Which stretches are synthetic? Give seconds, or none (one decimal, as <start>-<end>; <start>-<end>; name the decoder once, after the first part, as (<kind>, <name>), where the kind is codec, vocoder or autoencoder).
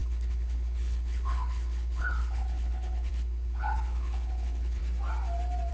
0.0-4.8 (codec, HILCodec)